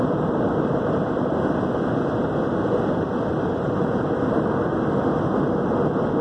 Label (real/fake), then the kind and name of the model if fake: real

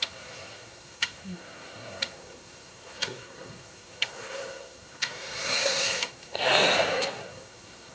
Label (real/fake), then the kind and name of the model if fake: fake, codec, SNAC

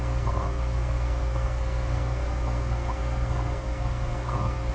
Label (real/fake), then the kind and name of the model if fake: fake, codec, SNAC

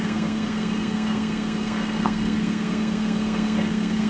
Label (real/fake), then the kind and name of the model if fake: fake, codec, SNAC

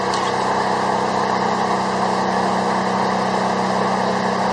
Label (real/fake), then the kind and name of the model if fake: real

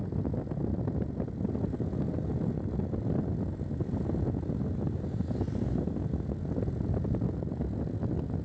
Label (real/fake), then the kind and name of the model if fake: real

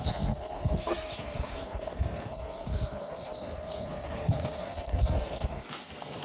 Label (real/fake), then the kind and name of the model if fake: fake, codec, SNAC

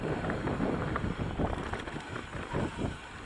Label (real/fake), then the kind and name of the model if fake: real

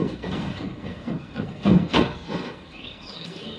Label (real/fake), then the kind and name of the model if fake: fake, codec, SNAC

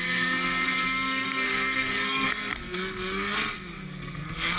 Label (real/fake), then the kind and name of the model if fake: fake, codec, SNAC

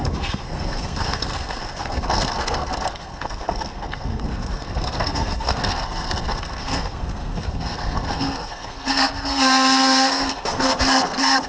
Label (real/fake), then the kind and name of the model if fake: fake, codec, SNAC